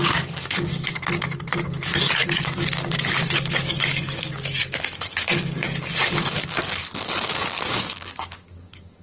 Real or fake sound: fake